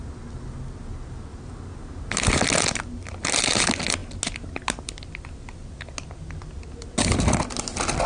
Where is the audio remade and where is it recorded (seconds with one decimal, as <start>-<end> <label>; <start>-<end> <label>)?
0.0-8.1 recorded